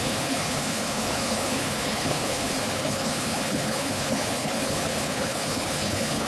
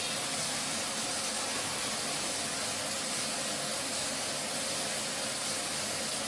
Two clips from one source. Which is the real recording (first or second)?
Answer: second